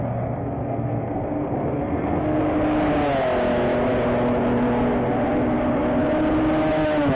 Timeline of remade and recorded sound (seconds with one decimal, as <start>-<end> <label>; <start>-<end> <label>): 0.0-0.4 recorded; 0.4-2.4 remade; 2.4-7.1 recorded